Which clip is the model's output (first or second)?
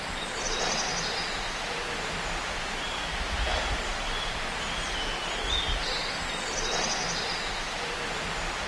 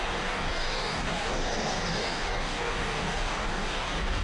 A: second